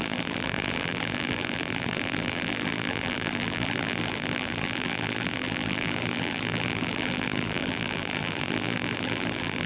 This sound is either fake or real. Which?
fake